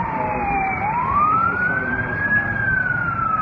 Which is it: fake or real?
fake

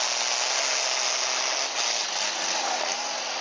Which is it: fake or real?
real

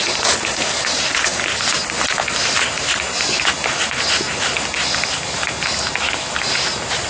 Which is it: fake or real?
real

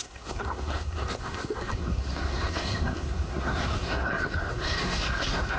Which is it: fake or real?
fake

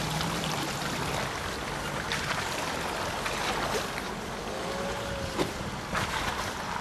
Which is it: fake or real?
real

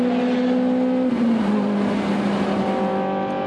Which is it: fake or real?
real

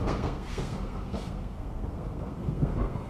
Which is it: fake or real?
fake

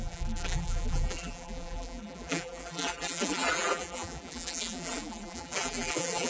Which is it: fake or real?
fake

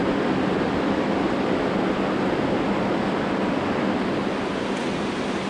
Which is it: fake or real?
real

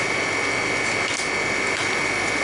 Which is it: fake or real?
real